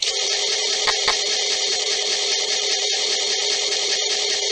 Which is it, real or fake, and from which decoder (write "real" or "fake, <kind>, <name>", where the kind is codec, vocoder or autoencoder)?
fake, vocoder, BigVGAN v2